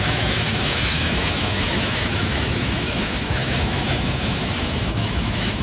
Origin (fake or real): fake